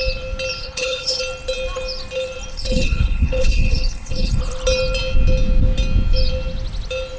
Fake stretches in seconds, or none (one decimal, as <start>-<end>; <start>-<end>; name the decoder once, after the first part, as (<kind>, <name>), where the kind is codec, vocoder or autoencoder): 0.6-1.2 (codec, HILCodec); 2.5-4.4